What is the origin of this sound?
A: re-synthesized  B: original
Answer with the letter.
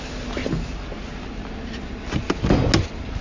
B